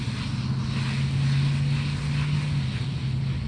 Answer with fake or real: real